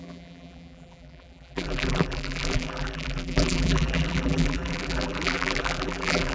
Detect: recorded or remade remade